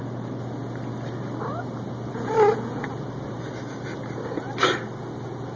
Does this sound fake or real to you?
real